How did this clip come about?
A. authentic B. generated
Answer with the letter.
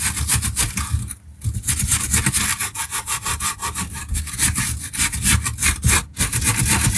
A